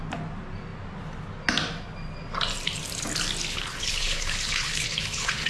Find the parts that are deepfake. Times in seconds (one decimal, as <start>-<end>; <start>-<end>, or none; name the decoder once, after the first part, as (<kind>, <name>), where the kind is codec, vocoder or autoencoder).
3.5-5.5 (codec, HILCodec)